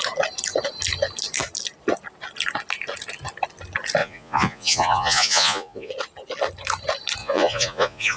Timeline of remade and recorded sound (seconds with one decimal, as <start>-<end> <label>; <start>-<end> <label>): 0.0-4.0 recorded; 4.0-5.9 remade; 5.9-7.2 recorded; 7.2-8.2 remade